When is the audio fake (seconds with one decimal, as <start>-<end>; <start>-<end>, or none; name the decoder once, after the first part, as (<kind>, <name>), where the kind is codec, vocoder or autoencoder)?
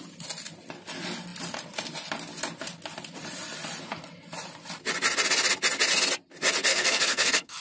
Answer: 6.7-7.6 (codec, SNAC)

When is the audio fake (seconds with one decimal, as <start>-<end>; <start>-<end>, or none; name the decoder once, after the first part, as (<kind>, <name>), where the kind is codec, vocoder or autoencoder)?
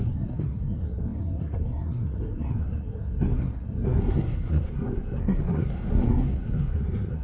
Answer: 0.0-7.2 (codec, SNAC)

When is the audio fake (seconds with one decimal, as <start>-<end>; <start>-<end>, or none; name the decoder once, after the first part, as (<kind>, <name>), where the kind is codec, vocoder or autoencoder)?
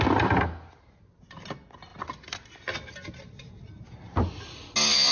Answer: none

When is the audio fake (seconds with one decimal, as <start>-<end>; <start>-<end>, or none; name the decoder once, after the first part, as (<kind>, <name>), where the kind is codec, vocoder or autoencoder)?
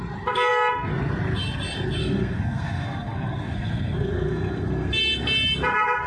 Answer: 2.0-5.0 (codec, SNAC)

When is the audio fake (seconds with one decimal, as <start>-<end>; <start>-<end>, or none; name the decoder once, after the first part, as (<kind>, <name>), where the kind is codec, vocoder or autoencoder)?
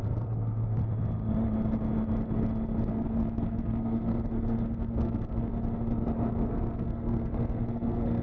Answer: 0.0-0.8 (codec, SNAC); 2.9-5.5; 6.3-8.2